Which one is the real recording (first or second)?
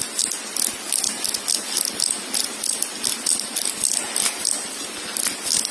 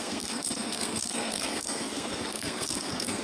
first